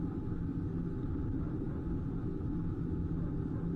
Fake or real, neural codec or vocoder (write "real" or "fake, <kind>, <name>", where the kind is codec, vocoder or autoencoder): real